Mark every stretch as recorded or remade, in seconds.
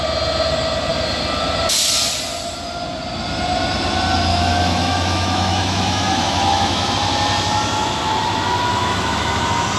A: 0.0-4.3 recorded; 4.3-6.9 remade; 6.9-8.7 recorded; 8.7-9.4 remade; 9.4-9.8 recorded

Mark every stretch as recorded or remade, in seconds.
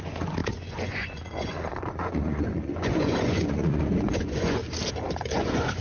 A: 0.0-4.6 remade; 4.6-5.2 recorded; 5.2-5.8 remade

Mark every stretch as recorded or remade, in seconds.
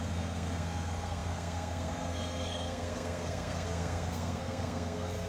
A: 0.0-5.3 remade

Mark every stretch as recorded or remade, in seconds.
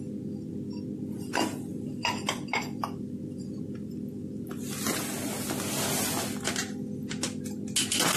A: 0.0-1.7 recorded; 1.7-4.6 remade; 4.6-8.2 recorded